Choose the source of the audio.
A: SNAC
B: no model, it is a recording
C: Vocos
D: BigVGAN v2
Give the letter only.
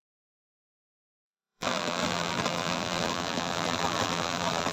D